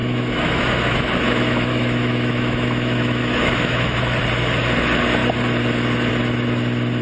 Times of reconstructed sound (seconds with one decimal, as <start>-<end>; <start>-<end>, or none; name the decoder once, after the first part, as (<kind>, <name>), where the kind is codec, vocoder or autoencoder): 0.0-4.2 (autoencoder, DAC-VAE)